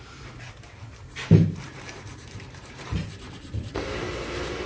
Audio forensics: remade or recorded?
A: remade